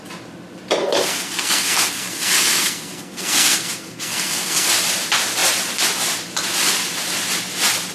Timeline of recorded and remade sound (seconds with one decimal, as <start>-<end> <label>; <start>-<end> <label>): 0.0-0.8 recorded; 0.8-4.7 remade; 4.7-7.9 recorded